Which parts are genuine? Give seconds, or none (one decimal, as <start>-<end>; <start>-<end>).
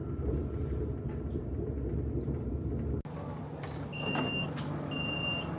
0.0-3.9; 4.5-5.6